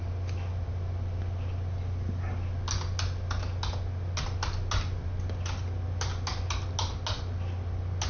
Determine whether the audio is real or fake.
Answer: real